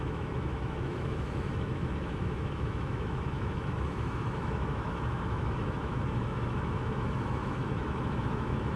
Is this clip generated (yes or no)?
yes